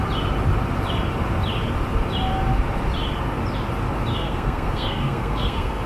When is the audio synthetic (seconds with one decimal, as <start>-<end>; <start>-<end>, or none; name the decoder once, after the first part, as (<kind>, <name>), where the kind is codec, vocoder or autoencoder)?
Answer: 4.1-5.9 (codec, SNAC)